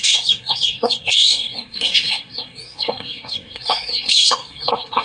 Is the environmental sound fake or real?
fake